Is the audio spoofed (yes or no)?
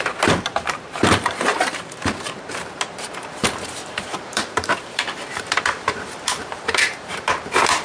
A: yes